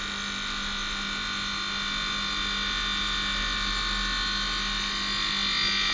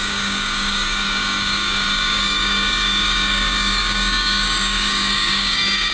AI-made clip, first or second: second